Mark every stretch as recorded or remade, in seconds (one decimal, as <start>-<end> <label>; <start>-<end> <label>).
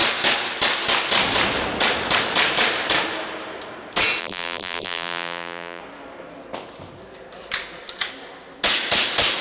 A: 0.0-4.2 recorded; 4.2-5.8 remade; 5.8-9.4 recorded